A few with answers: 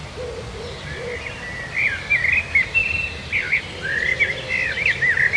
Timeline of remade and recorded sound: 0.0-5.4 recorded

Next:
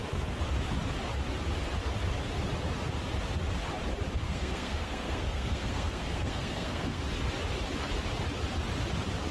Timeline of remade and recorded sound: 0.0-4.2 recorded; 4.2-7.0 remade; 7.0-9.3 recorded

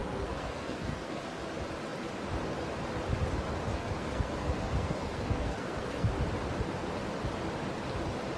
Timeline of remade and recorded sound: 0.0-1.2 remade; 1.2-3.7 recorded; 3.7-6.1 remade; 6.1-8.4 recorded

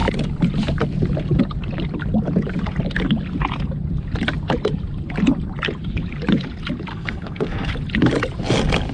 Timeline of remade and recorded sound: 0.0-6.9 recorded; 6.9-7.7 remade; 7.7-8.9 recorded

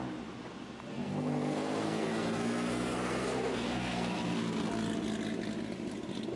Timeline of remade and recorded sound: 0.0-0.9 recorded; 0.9-4.7 remade; 4.7-6.4 recorded